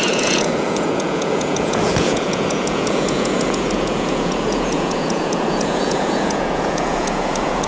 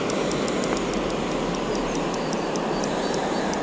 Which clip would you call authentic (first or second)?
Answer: second